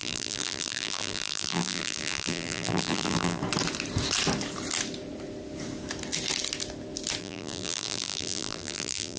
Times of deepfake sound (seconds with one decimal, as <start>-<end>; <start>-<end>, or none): 0.0-3.4; 7.2-9.2